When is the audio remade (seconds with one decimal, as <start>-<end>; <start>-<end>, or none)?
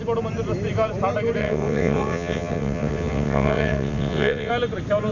1.4-4.5